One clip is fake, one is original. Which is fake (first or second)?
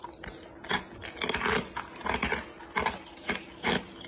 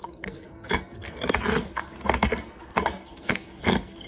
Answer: second